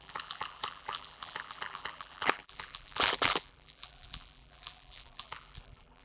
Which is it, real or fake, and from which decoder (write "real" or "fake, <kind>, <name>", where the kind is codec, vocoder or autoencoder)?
fake, vocoder, BigVGAN v2